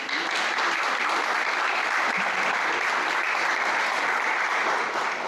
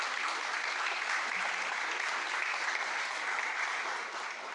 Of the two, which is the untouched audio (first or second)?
second